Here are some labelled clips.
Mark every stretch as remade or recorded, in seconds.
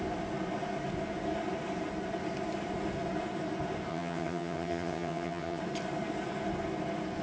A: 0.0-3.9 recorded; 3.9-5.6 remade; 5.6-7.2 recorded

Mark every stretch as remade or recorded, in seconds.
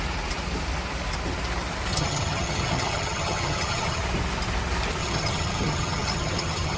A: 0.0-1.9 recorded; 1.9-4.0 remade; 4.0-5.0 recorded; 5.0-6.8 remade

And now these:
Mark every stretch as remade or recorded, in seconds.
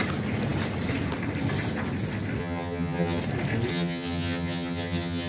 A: 0.0-2.4 recorded; 2.4-3.2 remade; 3.2-3.7 recorded; 3.7-5.3 remade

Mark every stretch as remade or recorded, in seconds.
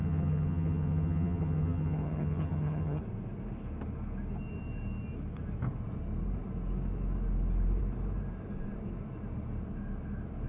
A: 0.0-3.0 remade; 3.0-10.5 recorded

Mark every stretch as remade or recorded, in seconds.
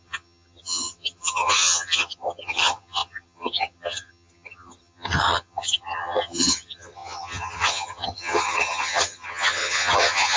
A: 0.0-10.4 remade